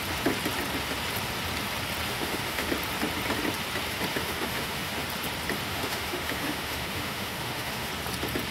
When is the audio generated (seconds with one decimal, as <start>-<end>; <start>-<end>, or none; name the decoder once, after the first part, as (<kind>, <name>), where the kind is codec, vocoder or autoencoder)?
2.1-2.7 (autoencoder, DAC-VAE); 4.1-4.9; 5.7-7.9